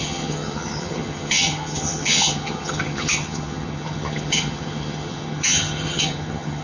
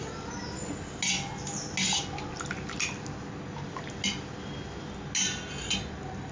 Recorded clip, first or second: second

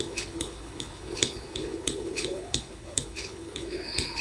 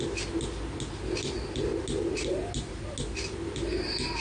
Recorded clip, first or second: second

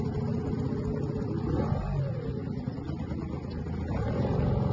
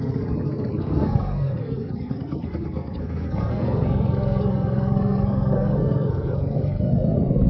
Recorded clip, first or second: first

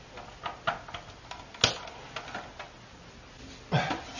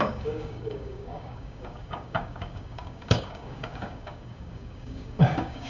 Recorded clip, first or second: first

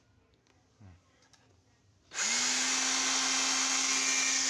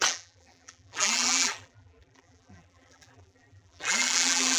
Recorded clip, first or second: first